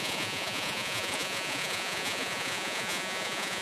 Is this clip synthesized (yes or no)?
yes